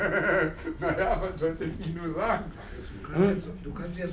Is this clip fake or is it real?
real